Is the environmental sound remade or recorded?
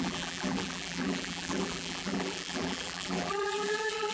remade